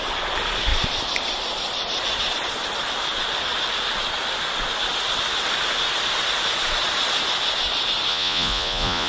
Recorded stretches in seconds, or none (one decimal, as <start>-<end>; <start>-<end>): 0.0-8.1